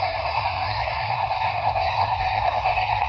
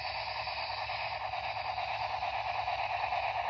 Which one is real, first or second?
second